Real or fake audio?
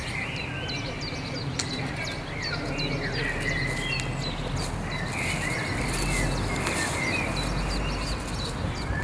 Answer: real